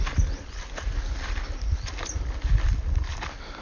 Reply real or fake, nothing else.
real